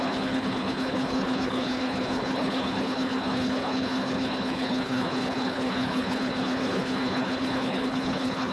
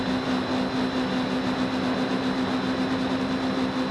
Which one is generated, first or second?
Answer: first